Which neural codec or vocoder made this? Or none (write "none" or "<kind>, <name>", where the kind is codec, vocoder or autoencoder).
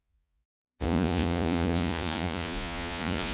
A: vocoder, Vocos